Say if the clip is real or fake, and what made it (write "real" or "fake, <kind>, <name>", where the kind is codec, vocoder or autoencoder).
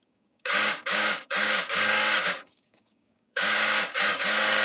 fake, codec, DAC